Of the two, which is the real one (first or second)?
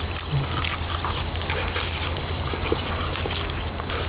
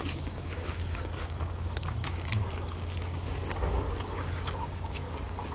first